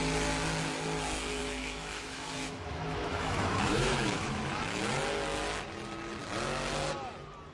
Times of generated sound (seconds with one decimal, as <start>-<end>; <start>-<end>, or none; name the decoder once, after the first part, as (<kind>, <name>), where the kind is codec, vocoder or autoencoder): 1.4-4.9 (autoencoder, DAC-VAE)